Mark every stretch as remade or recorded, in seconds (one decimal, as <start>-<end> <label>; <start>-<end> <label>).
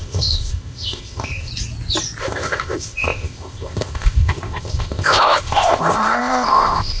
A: 0.0-1.5 remade; 1.5-2.2 recorded; 2.2-7.0 remade